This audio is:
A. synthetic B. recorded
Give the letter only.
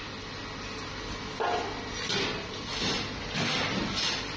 B